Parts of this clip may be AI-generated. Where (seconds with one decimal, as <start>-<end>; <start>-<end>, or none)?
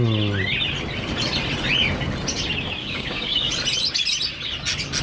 2.8-3.5